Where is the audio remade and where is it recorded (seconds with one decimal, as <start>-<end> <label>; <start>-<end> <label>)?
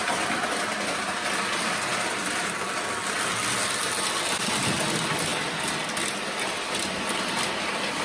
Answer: 0.0-8.0 recorded